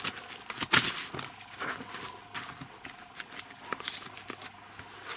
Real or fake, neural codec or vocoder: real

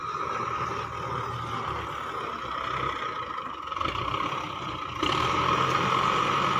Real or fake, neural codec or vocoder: real